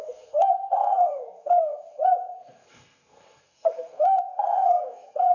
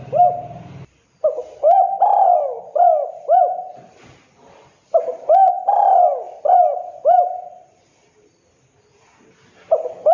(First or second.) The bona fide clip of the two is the second